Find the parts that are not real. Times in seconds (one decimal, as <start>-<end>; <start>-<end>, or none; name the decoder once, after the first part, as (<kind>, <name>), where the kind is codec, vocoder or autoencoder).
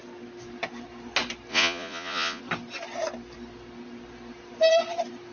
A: 1.5-2.4 (vocoder, Vocos)